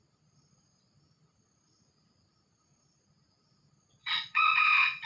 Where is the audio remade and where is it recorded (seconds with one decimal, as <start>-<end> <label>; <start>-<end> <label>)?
0.0-4.0 recorded; 4.0-5.1 remade